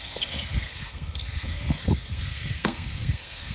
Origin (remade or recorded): remade